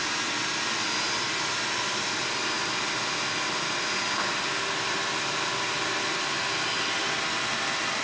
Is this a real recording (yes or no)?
yes